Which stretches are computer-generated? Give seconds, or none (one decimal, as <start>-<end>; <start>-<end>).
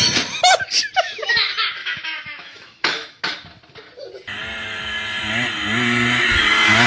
1.8-3.2